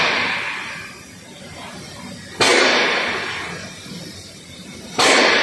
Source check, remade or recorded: recorded